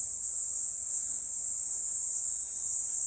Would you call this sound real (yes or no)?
yes